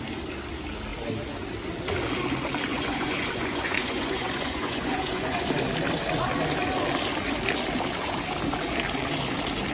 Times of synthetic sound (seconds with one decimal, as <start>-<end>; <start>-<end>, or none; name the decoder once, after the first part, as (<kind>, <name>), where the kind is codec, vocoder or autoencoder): 2.7-5.5 (vocoder, Vocos)